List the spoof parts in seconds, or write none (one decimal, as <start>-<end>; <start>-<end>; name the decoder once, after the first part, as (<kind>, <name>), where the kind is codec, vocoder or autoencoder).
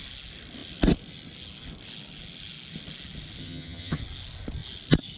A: 3.4-4.0 (vocoder, HiFi-GAN)